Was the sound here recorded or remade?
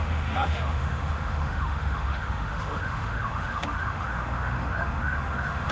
remade